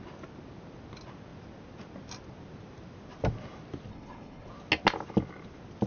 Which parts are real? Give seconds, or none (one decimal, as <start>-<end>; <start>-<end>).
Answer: 0.0-3.9; 4.5-5.9